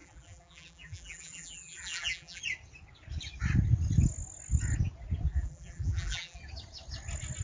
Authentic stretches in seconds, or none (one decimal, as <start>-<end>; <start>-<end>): 2.4-5.3; 6.4-7.4